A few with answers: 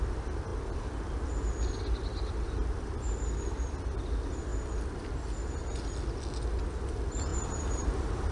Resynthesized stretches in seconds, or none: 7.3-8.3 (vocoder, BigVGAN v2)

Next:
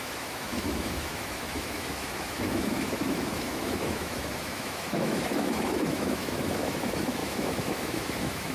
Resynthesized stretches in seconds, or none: 0.0-8.5 (autoencoder, DAC-VAE)

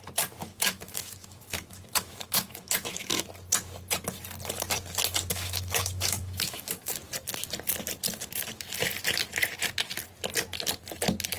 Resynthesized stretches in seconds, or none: 0.4-3.2 (autoencoder, DAC-VAE); 5.3-6.9

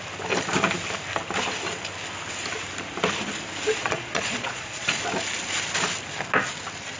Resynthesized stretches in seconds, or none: 3.7-5.0 (vocoder, Vocos)

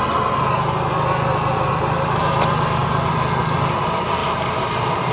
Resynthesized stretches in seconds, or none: 1.3-2.1 (vocoder, BigVGAN v2); 4.2-5.1